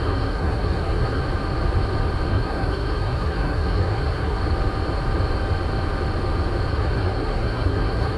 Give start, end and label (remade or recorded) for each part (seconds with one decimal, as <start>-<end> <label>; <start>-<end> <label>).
0.0-1.2 remade; 1.2-2.3 recorded; 2.3-4.4 remade; 4.4-6.7 recorded; 6.7-8.2 remade

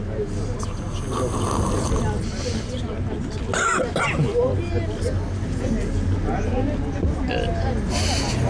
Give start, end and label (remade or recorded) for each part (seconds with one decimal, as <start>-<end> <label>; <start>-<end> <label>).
0.0-8.5 recorded

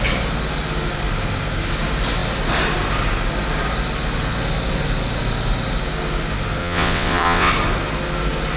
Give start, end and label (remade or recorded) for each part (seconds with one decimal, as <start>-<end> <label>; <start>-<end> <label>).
0.0-6.6 recorded; 6.6-7.5 remade; 7.5-8.6 recorded

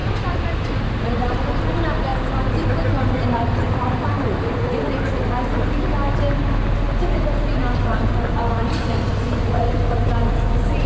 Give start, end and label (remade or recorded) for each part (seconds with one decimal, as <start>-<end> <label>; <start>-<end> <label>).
0.0-1.0 remade; 1.0-2.1 recorded; 2.1-5.1 remade; 5.1-7.6 recorded; 7.6-8.3 remade; 8.3-10.9 recorded

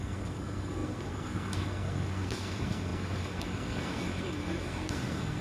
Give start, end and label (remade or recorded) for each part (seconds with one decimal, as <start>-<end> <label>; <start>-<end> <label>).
0.0-5.4 remade